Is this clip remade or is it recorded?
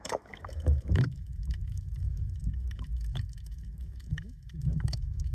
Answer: remade